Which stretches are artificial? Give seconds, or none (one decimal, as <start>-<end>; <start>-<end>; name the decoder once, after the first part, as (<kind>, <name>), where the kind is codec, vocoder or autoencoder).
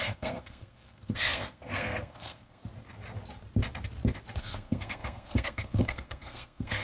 0.0-2.6 (codec, SNAC); 4.4-6.8